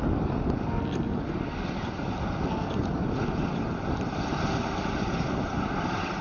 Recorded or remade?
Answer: recorded